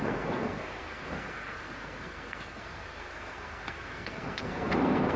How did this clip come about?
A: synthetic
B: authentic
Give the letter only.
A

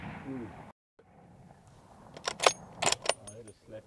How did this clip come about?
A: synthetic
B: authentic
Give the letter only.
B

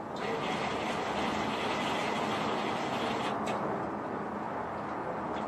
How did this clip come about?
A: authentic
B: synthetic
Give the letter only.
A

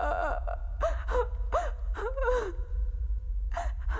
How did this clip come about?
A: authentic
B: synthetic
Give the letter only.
A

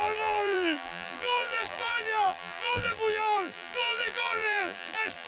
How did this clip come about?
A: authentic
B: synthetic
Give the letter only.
B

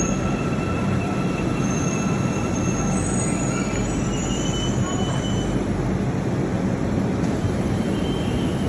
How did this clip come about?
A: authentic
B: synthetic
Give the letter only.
B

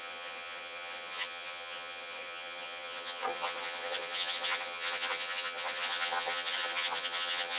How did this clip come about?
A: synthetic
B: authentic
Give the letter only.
A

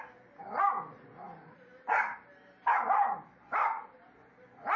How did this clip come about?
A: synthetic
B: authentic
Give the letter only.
B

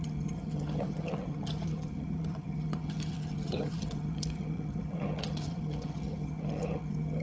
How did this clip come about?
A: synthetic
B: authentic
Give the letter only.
A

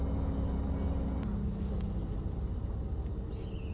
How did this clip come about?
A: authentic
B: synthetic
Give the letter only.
A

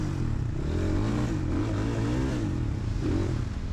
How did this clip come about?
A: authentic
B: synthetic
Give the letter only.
A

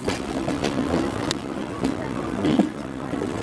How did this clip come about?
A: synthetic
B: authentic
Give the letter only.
A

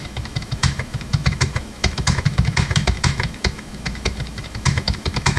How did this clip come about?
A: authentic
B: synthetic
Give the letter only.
B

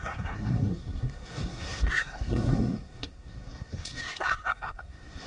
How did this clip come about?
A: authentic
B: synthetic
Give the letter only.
B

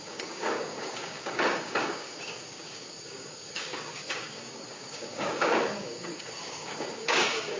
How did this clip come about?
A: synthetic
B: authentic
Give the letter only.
A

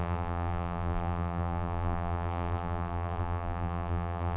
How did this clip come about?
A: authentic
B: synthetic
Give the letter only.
B